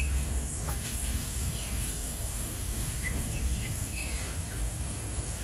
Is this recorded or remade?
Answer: remade